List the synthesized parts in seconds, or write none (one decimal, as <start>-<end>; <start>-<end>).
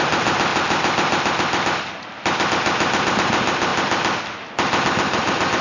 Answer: none